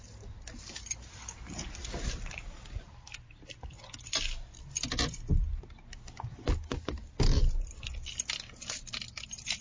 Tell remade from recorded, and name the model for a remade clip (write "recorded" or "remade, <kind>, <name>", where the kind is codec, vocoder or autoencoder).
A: recorded